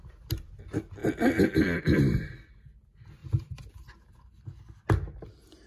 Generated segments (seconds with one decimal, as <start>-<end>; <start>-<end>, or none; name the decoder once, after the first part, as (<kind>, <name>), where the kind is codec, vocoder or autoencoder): none